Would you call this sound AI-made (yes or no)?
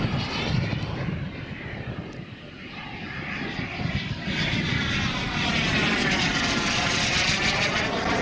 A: no